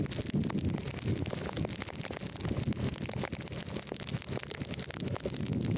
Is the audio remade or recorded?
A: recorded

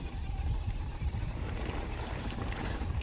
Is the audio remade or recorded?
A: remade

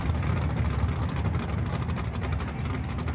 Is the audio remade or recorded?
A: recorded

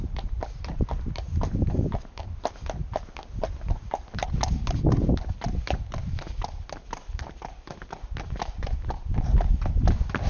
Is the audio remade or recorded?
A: recorded